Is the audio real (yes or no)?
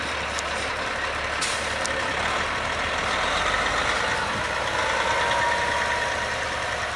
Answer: yes